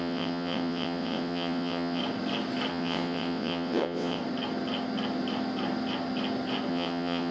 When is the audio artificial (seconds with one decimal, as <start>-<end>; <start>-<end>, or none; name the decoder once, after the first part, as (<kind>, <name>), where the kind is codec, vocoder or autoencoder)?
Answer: 0.0-2.0 (vocoder, WaveNeXt); 2.7-4.2; 6.7-7.3